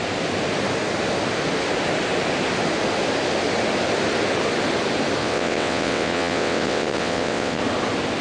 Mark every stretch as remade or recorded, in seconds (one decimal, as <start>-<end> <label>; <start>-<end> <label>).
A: 0.0-5.2 recorded; 5.2-7.6 remade; 7.6-8.2 recorded